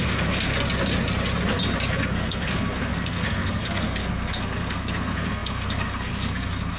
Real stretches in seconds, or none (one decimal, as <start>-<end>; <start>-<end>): 0.5-1.9